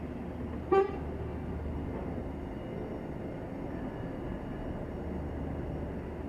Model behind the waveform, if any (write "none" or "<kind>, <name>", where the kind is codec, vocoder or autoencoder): none